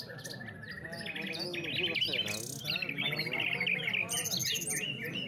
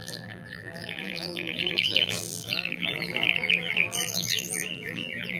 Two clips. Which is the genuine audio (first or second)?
first